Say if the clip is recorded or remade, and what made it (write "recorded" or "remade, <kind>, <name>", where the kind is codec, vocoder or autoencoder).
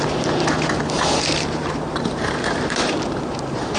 remade, vocoder, BigVGAN v2